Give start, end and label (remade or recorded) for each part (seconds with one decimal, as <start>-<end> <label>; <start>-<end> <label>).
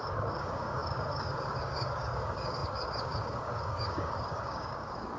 0.0-5.2 remade